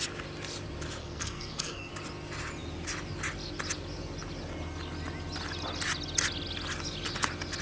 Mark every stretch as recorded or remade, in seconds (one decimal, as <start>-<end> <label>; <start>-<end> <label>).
0.0-1.0 recorded; 1.0-1.9 remade; 1.9-7.6 recorded

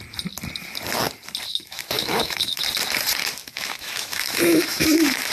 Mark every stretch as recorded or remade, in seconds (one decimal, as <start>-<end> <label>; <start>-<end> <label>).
0.0-1.5 recorded; 1.5-2.6 remade; 2.6-3.4 recorded; 3.4-5.3 remade